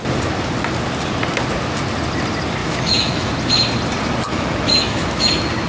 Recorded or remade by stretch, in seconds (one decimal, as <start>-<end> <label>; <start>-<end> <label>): 0.0-2.6 recorded; 2.6-3.3 remade; 3.3-4.3 recorded; 4.3-5.3 remade; 5.3-5.7 recorded

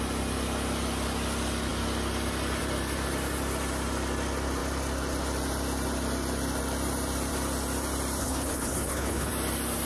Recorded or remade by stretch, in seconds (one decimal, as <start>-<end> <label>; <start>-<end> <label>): 0.0-8.2 recorded; 8.2-9.3 remade; 9.3-9.9 recorded

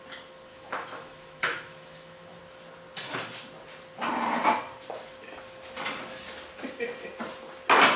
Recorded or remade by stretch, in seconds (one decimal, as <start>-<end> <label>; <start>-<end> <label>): 0.0-0.5 recorded; 0.5-2.4 remade; 2.4-8.0 recorded